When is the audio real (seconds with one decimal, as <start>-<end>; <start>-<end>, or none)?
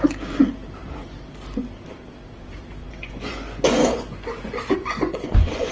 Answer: 0.0-2.8